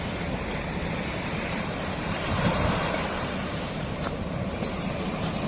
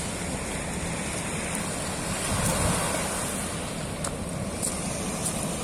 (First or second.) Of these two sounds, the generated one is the first